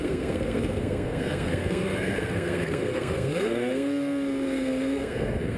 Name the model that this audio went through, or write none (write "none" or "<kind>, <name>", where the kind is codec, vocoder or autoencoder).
codec, SNAC